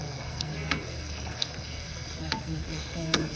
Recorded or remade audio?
remade